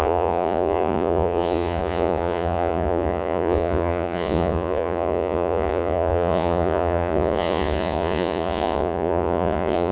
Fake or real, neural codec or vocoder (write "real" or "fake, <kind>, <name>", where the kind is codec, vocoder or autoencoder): fake, vocoder, Vocos